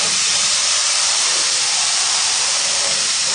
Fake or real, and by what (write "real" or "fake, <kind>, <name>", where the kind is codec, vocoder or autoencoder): fake, vocoder, BigVGAN v2